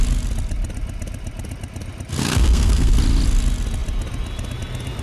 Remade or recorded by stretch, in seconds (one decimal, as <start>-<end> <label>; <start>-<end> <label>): 0.0-2.2 recorded; 2.2-2.9 remade; 2.9-5.0 recorded